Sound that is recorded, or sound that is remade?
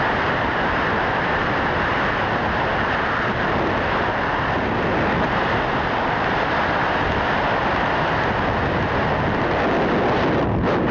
recorded